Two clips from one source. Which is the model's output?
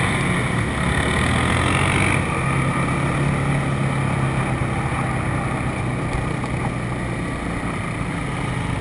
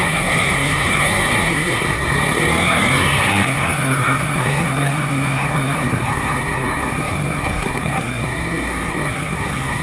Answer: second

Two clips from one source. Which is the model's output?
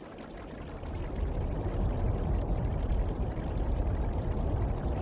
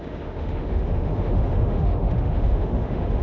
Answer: second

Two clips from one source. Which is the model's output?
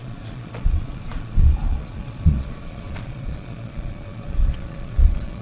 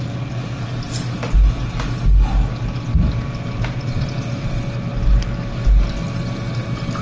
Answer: first